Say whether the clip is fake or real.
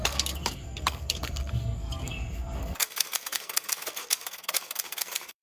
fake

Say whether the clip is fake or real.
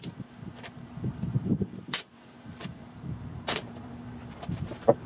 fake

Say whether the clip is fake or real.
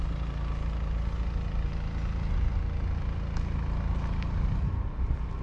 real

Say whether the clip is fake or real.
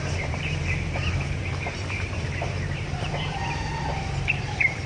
fake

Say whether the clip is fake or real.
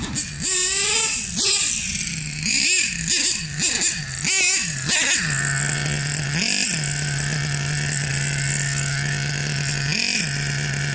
real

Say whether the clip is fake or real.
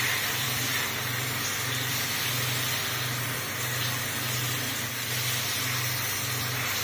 fake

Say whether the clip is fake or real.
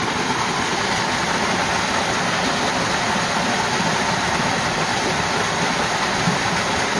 real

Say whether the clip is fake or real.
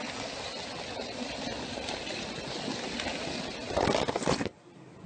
real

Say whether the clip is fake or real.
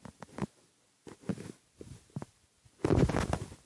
real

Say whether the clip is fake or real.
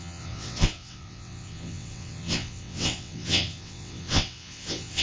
fake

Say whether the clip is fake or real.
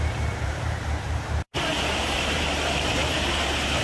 fake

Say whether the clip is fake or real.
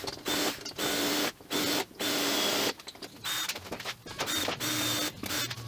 real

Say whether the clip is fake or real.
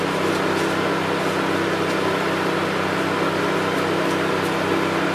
real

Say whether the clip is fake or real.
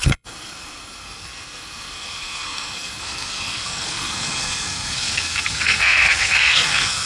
fake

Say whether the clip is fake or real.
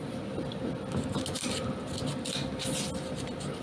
real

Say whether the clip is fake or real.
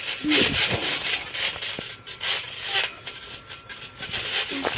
real